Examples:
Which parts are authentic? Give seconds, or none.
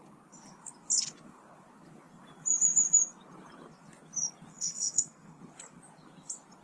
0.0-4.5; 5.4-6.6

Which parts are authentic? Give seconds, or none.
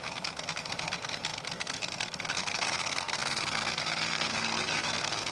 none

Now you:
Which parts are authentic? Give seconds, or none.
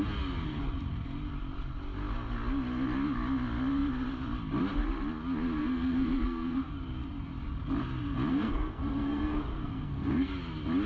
0.0-5.6; 6.7-8.3; 10.3-10.9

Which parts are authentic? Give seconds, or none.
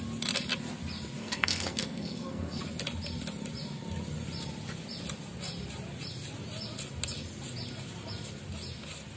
0.0-1.2; 2.6-9.2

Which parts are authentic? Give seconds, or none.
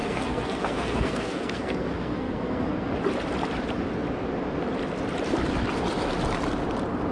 2.9-7.1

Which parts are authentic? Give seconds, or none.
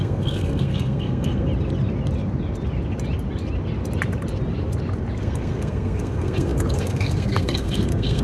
1.5-5.2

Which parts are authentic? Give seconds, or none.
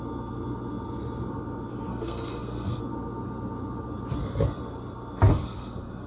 0.0-1.9; 2.8-5.3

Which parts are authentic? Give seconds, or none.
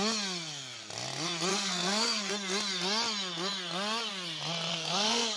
0.0-1.5; 2.3-4.7